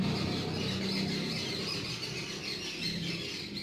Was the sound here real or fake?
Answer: real